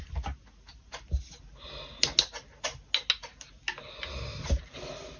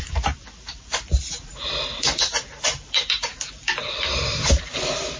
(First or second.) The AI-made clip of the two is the second